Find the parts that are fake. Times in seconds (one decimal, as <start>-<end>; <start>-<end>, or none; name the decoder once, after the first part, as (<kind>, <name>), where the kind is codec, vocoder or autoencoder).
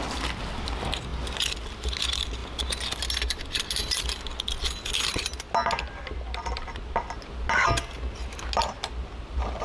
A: none